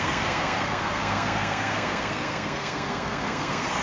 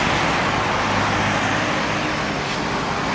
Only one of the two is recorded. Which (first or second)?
second